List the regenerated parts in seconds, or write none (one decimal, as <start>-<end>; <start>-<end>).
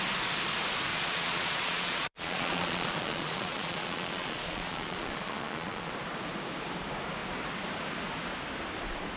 0.9-5.9